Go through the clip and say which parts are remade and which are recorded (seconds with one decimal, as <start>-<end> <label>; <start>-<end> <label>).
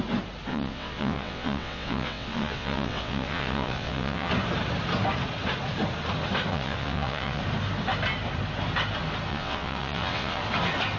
0.0-0.5 recorded; 0.5-4.3 remade; 4.3-6.5 recorded; 6.5-7.4 remade; 7.4-9.3 recorded; 9.3-10.4 remade; 10.4-11.0 recorded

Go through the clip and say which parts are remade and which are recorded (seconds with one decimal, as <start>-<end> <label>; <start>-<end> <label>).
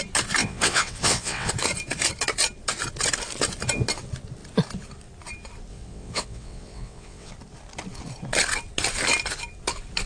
0.0-0.4 recorded; 0.4-1.5 remade; 1.5-5.7 recorded; 5.7-7.3 remade; 7.3-10.1 recorded